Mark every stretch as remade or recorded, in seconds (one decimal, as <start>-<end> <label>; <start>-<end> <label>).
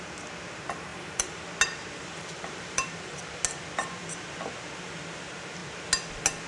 0.0-0.9 recorded; 0.9-1.5 remade; 1.5-2.0 recorded; 2.0-3.2 remade; 3.2-6.5 recorded